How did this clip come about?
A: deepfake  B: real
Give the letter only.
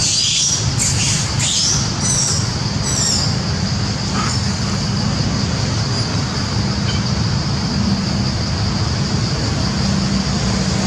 B